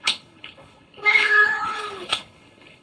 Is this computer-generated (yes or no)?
yes